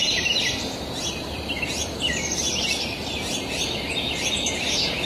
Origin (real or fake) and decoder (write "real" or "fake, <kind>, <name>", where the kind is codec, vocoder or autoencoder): fake, vocoder, BigVGAN v2